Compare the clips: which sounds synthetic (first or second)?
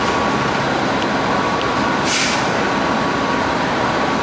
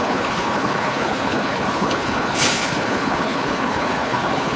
second